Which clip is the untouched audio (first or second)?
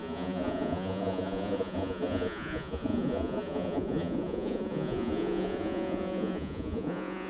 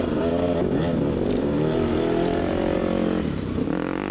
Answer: second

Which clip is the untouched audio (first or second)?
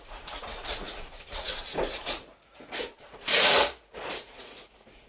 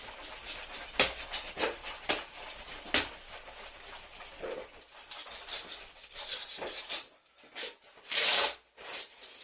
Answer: second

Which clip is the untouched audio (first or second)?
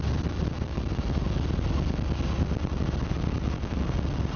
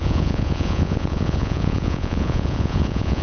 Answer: first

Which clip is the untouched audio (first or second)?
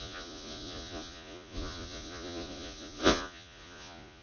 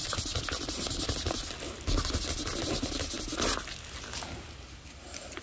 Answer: second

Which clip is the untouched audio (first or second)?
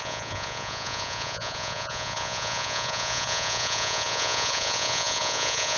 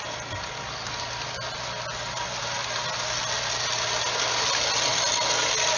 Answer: second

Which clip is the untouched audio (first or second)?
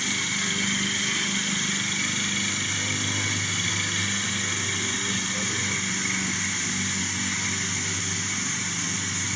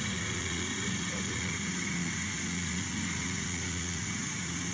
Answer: first